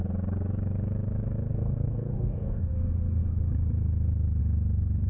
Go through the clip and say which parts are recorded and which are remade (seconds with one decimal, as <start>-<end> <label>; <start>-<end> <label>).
0.0-1.5 recorded; 1.5-2.7 remade; 2.7-5.1 recorded